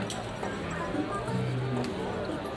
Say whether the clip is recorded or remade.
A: recorded